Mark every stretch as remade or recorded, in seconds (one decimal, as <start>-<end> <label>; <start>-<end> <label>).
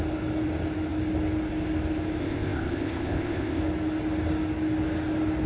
0.0-2.2 recorded; 2.2-3.6 remade; 3.6-5.5 recorded